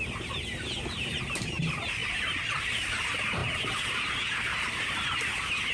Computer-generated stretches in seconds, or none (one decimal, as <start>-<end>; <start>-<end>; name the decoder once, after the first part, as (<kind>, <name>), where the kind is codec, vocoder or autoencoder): none